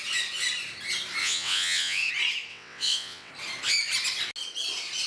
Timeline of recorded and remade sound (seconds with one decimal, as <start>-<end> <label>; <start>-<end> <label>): 0.0-1.2 recorded; 1.2-2.1 remade; 2.1-2.5 recorded; 2.5-3.3 remade; 3.3-5.1 recorded